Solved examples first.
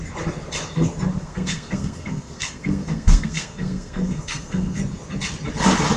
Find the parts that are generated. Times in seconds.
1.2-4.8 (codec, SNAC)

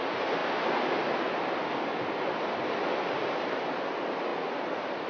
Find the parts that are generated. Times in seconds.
none

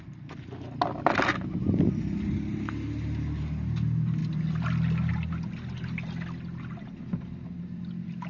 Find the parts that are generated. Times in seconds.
none

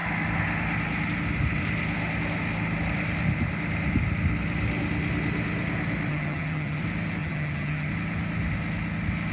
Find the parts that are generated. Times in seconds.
6.1-6.8 (vocoder, HiFi-GAN); 7.2-7.9

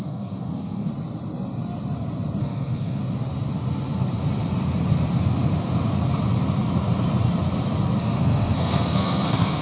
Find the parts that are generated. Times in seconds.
0.0-0.9 (codec, SNAC); 2.4-3.0; 8.0-9.6